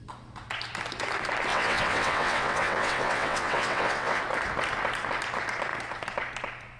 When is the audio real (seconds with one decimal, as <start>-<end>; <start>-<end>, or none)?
0.0-1.5; 4.2-6.8